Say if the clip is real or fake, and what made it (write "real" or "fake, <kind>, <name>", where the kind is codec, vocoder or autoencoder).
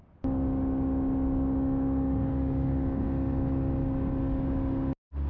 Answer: real